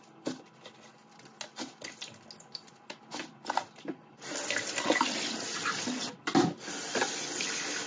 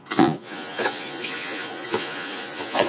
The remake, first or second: second